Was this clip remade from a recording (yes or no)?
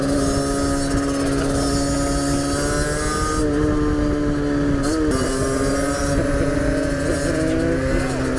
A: no